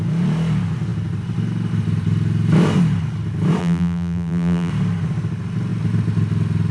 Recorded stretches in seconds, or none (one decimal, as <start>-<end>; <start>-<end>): 0.0-3.6; 4.7-6.7